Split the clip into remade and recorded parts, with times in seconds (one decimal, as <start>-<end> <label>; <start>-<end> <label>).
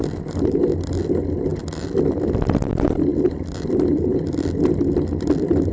0.0-1.5 recorded; 1.5-2.7 remade; 2.7-3.1 recorded; 3.1-5.7 remade